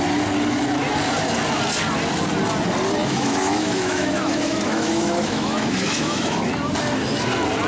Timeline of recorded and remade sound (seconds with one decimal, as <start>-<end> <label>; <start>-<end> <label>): 0.0-3.0 recorded; 3.0-6.5 remade; 6.5-7.7 recorded